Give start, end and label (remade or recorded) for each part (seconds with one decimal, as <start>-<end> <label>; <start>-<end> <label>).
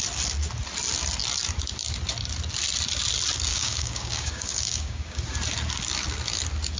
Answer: 0.0-3.5 recorded; 3.5-5.2 remade; 5.2-6.8 recorded